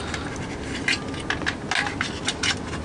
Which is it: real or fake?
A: real